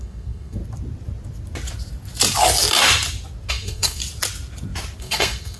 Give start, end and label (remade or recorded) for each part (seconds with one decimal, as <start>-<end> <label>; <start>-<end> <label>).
0.0-0.6 remade; 0.6-3.5 recorded; 3.5-4.0 remade; 4.0-5.0 recorded; 5.0-5.6 remade